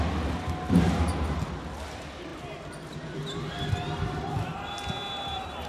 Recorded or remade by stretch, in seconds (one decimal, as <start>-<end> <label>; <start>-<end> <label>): 0.0-5.7 recorded